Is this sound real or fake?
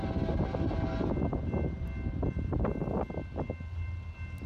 real